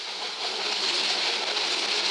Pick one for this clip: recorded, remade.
recorded